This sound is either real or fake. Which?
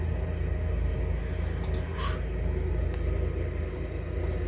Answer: real